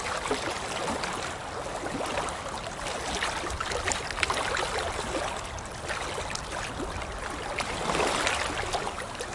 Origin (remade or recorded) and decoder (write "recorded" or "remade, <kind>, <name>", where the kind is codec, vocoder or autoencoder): recorded